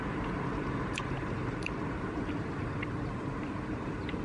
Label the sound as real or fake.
fake